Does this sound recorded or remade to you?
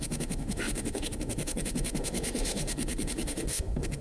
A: remade